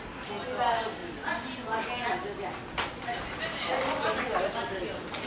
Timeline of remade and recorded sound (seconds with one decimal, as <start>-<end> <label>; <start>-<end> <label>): 0.0-5.3 recorded